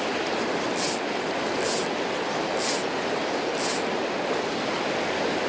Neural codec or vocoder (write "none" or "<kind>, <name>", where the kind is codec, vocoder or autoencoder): none